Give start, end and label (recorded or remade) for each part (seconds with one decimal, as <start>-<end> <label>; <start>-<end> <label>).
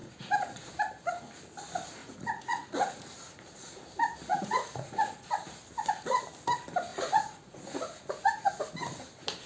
0.0-0.7 remade; 0.7-2.0 recorded; 2.0-3.8 remade; 3.8-4.3 recorded; 4.3-5.3 remade; 5.3-6.9 recorded; 6.9-8.6 remade; 8.6-9.5 recorded